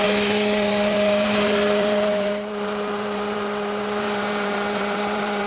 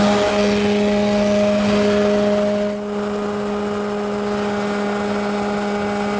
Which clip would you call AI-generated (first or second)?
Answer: first